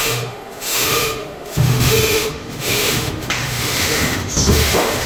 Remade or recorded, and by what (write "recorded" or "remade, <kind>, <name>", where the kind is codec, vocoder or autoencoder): remade, autoencoder, DAC-VAE